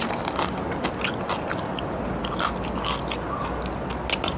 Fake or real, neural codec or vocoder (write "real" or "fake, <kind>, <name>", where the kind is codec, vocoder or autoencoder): real